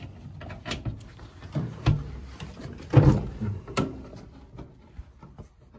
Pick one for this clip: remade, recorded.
recorded